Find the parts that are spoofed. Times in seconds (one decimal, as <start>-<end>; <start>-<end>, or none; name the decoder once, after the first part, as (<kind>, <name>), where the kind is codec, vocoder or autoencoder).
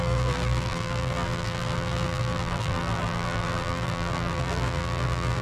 0.0-5.4 (vocoder, BigVGAN v2)